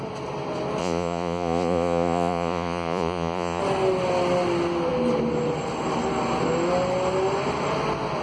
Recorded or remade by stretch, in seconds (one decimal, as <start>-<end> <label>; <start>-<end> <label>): 0.0-0.8 recorded; 0.8-3.6 remade; 3.6-8.2 recorded